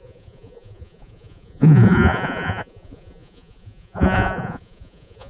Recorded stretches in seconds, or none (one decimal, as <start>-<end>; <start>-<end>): none